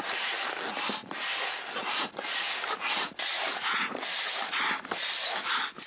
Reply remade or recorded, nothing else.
recorded